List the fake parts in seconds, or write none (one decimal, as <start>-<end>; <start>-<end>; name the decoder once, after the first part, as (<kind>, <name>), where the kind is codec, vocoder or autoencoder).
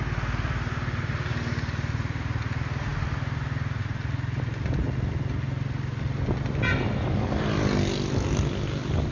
none